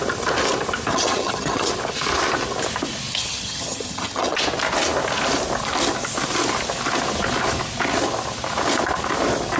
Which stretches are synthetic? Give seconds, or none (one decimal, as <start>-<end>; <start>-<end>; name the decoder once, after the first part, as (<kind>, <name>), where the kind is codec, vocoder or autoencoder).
0.9-1.7 (vocoder, HiFi-GAN); 3.1-4.4